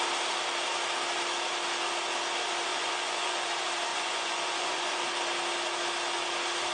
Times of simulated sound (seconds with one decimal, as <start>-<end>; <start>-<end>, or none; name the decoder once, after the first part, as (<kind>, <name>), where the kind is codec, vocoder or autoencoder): 2.7-3.5 (vocoder, Vocos); 3.9-5.0